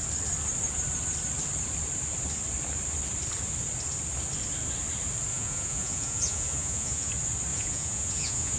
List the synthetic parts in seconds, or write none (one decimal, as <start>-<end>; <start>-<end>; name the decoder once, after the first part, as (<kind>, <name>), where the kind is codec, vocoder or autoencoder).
5.3-7.1 (vocoder, Vocos); 7.5-8.6